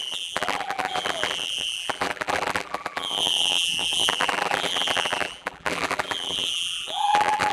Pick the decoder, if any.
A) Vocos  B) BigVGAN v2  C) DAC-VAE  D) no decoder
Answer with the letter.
B